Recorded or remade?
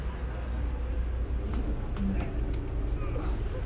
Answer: recorded